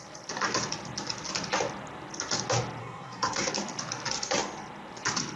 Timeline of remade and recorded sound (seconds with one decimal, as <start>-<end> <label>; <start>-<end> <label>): 0.0-2.8 recorded; 2.8-3.5 remade; 3.5-5.4 recorded